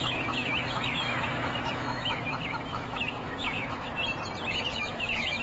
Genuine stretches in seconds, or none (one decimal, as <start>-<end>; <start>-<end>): 4.0-4.5